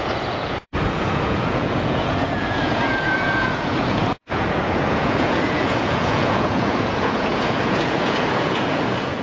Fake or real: fake